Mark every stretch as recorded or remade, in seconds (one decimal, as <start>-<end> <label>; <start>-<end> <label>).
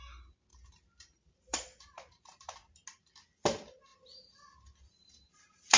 0.0-0.5 recorded; 0.5-2.5 remade; 2.5-3.9 recorded; 3.9-5.8 remade